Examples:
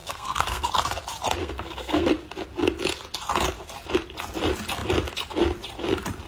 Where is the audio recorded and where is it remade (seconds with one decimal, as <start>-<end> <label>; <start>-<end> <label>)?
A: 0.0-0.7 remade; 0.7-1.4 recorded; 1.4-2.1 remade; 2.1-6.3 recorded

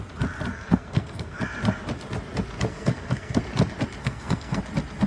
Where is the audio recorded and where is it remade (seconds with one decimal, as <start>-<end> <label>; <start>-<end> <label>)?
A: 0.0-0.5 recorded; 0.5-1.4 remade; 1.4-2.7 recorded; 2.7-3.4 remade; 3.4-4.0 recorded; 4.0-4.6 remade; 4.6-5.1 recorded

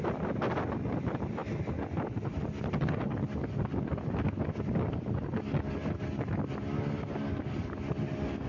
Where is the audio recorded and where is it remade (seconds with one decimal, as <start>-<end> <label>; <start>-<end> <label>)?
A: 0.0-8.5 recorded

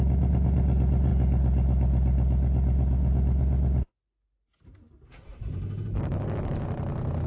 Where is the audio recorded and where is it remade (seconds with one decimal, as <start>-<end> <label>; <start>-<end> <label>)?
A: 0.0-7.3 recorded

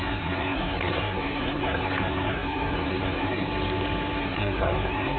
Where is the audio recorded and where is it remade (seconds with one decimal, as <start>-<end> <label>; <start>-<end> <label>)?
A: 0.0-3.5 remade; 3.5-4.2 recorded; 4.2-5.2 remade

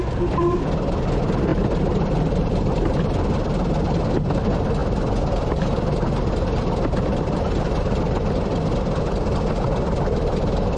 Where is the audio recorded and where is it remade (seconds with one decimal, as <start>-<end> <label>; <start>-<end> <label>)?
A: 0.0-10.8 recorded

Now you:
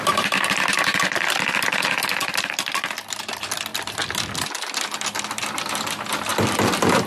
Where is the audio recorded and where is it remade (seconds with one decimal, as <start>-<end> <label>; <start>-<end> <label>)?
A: 0.0-3.7 remade; 3.7-5.2 recorded; 5.2-7.1 remade